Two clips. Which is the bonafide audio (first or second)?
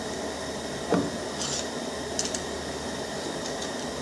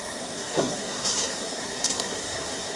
first